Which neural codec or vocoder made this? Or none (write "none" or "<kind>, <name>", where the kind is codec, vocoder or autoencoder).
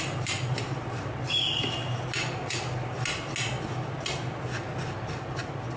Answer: none